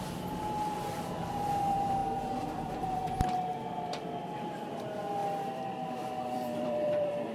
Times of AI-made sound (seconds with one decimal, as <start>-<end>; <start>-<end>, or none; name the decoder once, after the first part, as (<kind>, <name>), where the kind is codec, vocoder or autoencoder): 0.0-3.5 (vocoder, BigVGAN v2); 4.2-5.2; 5.9-7.3